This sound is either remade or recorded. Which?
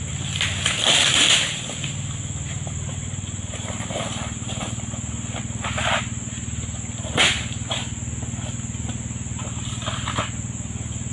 recorded